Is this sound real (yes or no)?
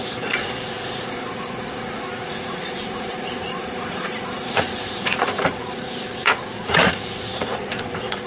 no